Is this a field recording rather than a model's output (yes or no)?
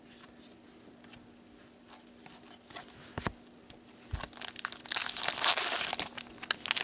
yes